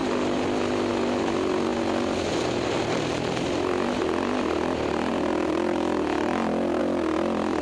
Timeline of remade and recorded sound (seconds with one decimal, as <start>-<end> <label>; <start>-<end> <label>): 0.0-7.6 recorded